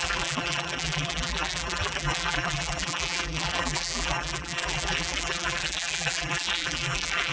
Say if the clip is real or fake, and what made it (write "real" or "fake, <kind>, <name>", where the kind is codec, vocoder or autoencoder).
fake, vocoder, BigVGAN v2